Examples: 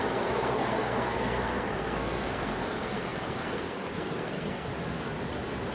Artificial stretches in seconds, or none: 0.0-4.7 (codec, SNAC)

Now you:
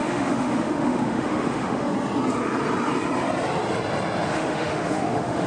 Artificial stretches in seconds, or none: 0.0-1.9 (autoencoder, DAC-VAE); 4.3-5.5

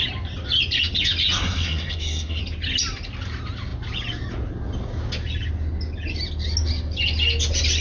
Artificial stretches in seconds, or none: 1.4-2.4 (codec, SNAC)